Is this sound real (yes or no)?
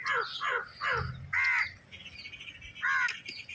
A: yes